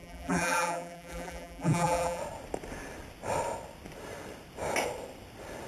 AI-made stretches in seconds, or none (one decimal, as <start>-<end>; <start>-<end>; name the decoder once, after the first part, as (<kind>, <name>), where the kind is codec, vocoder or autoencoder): 0.0-2.2 (vocoder, BigVGAN v2)